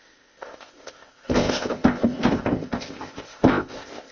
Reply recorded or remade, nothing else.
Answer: remade